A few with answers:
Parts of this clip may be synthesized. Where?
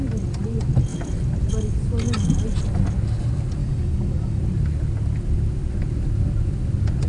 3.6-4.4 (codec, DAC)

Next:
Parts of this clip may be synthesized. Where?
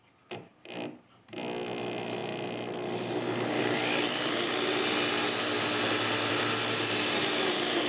none